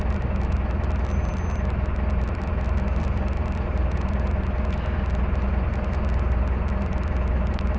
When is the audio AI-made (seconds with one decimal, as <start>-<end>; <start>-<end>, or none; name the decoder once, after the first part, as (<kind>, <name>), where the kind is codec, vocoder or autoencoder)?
none